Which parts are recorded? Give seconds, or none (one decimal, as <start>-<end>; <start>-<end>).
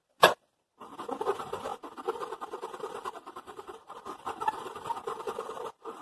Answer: 0.0-6.0